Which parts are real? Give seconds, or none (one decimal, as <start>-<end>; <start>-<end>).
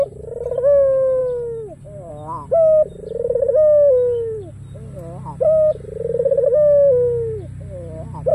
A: 0.0-8.3